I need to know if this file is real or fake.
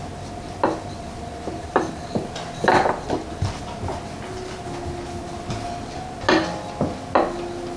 real